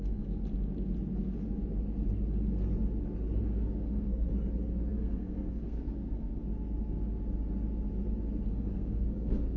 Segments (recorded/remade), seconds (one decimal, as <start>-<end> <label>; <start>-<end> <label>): 0.0-0.4 remade; 0.4-3.4 recorded; 3.4-4.3 remade; 4.3-4.9 recorded; 4.9-6.4 remade; 6.4-8.5 recorded; 8.5-9.6 remade